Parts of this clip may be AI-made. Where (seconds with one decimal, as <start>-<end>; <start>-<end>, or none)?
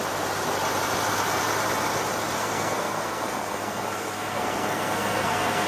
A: 2.4-5.7